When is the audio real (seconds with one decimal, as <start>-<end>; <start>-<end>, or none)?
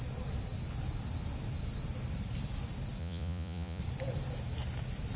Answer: 0.0-3.0; 3.8-5.2